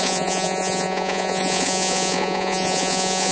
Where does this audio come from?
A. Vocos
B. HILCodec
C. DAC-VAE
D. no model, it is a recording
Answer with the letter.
A